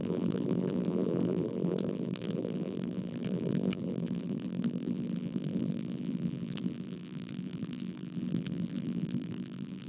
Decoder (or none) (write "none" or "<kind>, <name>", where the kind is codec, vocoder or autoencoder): vocoder, BigVGAN v2